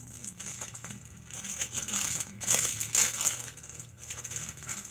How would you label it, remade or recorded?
remade